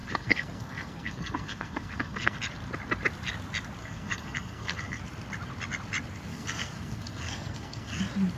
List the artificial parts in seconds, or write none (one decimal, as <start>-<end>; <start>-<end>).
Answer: 0.0-2.4; 3.8-5.0; 6.3-8.0